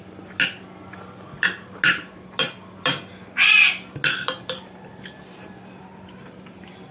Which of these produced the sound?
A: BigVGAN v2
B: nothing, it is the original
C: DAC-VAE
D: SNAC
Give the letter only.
B